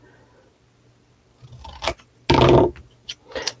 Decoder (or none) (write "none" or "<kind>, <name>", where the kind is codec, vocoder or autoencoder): none